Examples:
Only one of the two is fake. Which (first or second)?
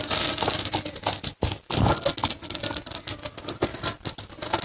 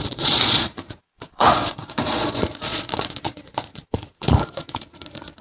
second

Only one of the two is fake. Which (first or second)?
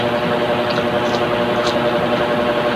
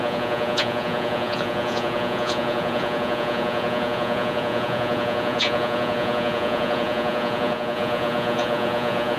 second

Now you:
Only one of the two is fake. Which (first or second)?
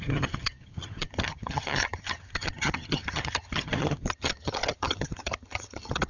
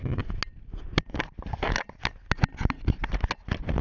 first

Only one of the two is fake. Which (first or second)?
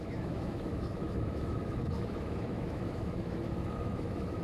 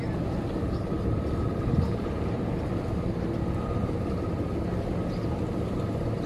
first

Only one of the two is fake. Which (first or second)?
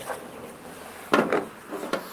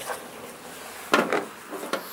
first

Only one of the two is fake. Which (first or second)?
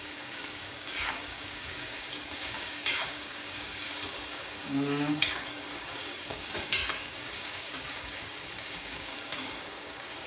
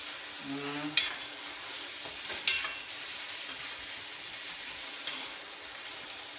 first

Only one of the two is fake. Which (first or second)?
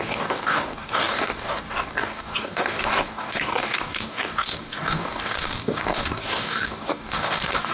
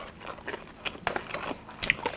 first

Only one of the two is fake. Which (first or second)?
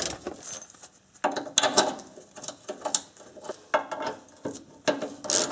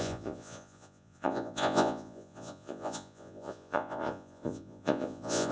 second